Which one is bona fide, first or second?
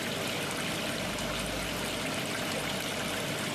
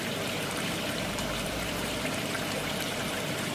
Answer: first